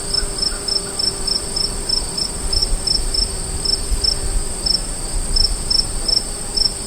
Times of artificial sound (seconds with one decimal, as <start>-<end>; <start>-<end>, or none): none